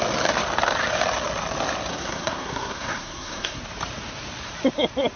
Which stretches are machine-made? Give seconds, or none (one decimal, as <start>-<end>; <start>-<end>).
1.9-3.6